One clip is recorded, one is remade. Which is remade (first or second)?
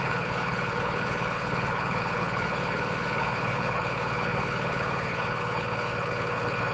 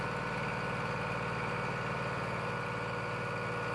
first